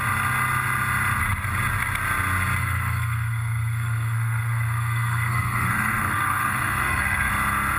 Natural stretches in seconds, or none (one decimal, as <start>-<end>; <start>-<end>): 0.0-2.6; 7.3-7.8

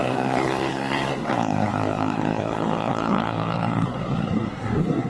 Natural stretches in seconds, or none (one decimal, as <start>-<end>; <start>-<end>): none

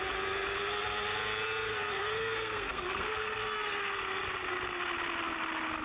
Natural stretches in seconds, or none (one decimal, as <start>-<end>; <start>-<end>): 0.0-1.7; 3.8-5.8

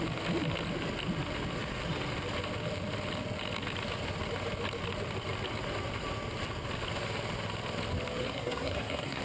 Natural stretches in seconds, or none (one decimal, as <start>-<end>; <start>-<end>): 0.0-8.2

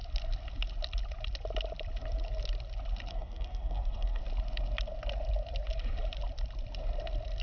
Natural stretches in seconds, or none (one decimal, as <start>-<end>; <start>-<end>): 0.0-3.1; 4.2-7.4